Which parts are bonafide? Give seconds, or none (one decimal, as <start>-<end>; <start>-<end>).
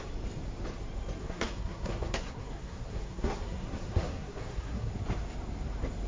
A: 0.0-1.2; 4.9-6.1